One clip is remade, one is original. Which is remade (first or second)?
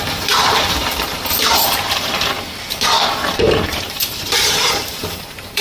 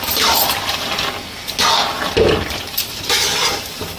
first